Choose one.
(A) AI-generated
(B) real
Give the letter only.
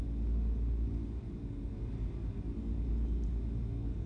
B